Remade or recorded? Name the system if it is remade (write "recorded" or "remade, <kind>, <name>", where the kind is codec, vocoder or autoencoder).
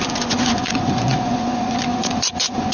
remade, vocoder, Vocos